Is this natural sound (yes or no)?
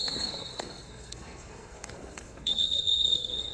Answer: no